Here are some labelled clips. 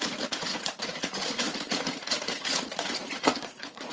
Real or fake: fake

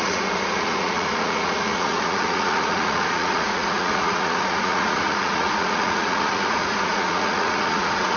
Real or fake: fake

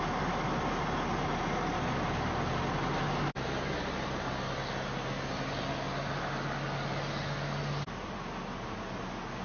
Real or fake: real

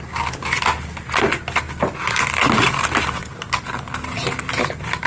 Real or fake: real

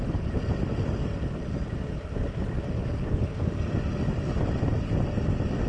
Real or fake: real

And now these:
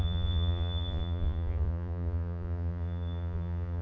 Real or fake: fake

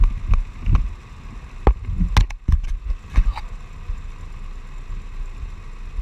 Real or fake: real